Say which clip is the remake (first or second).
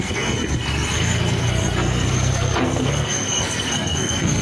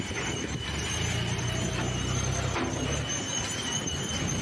first